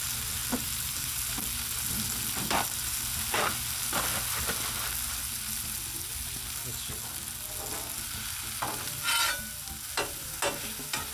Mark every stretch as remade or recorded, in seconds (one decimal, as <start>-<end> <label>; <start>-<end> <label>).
0.0-11.1 recorded